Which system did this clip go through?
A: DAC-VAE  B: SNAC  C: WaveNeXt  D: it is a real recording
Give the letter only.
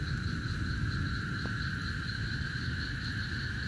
D